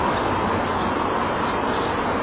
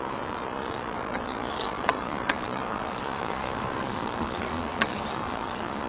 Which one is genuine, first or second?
first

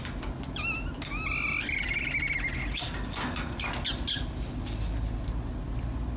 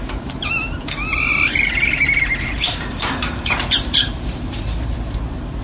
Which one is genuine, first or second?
first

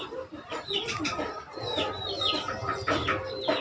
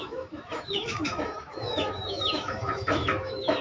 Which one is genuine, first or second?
first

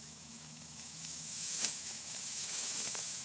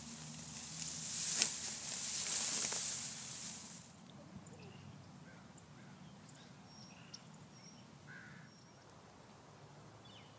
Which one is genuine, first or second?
second